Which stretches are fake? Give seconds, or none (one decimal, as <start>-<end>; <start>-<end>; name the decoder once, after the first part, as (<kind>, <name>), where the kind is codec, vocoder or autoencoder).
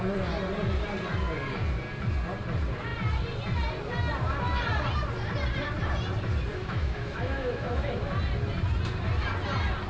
6.5-8.1 (autoencoder, DAC-VAE)